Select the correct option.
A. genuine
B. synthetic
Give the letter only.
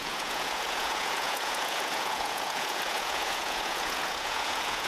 B